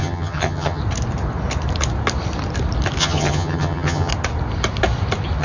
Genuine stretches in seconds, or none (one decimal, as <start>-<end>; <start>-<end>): 0.8-3.0; 4.1-5.4